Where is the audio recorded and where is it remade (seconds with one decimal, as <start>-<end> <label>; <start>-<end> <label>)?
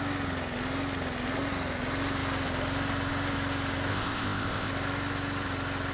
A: 0.0-3.9 recorded; 3.9-4.7 remade; 4.7-5.9 recorded